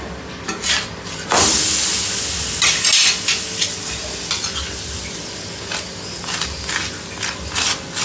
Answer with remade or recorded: recorded